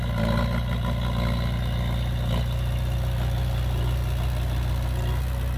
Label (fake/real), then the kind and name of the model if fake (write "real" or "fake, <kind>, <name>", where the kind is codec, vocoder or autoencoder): real